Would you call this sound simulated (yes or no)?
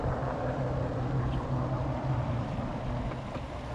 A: yes